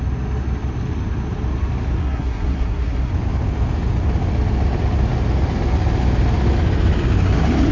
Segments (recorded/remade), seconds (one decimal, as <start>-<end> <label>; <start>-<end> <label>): 0.0-2.0 recorded; 2.0-3.1 remade; 3.1-7.7 recorded

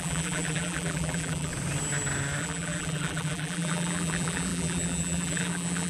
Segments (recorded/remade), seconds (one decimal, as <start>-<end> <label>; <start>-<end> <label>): 0.0-1.5 remade; 1.5-2.4 recorded; 2.4-5.9 remade

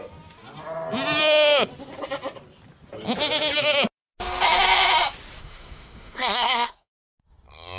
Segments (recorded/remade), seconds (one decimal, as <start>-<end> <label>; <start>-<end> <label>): 0.0-5.4 recorded; 5.4-6.9 remade; 6.9-7.8 recorded

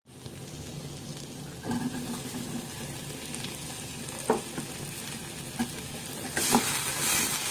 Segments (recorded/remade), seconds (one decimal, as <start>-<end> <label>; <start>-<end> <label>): 0.0-7.5 recorded

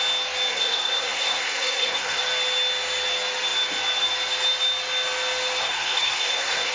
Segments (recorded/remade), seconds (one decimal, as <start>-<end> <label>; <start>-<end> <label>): 0.0-0.5 recorded; 0.5-2.2 remade; 2.2-5.6 recorded; 5.6-6.7 remade